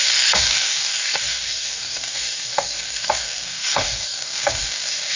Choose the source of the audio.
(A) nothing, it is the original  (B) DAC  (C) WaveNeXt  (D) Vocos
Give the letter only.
B